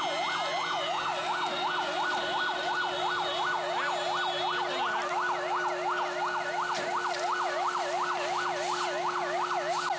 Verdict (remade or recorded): recorded